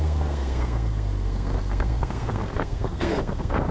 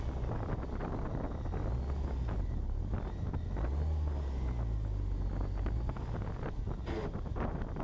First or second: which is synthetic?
first